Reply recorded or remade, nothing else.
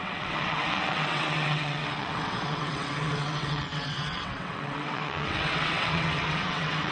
remade